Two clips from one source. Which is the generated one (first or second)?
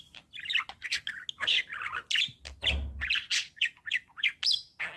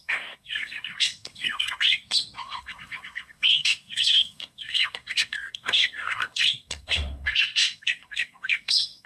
second